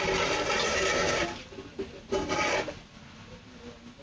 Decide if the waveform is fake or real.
real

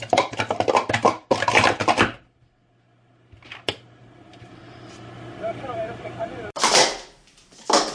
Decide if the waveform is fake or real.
real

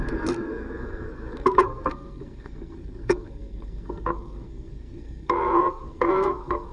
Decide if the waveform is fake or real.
fake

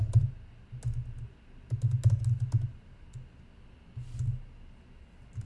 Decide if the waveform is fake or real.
real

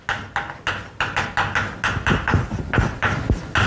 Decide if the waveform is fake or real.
real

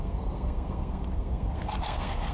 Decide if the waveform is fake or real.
fake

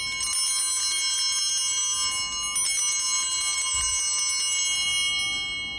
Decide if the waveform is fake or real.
real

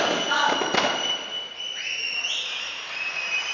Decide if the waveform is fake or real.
real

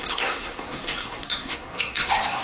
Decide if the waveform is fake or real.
fake